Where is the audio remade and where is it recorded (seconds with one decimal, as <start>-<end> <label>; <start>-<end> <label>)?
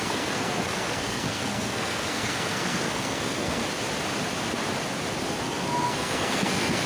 0.0-3.6 remade; 3.6-5.4 recorded; 5.4-6.9 remade